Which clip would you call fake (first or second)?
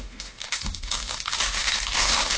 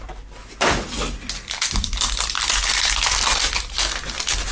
first